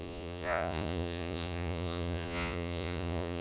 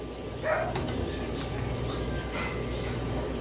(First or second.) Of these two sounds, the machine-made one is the first